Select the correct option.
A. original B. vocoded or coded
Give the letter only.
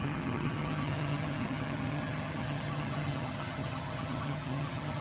B